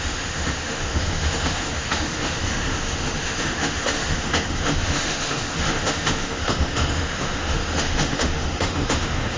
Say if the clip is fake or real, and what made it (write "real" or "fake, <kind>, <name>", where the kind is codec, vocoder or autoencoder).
fake, autoencoder, DAC-VAE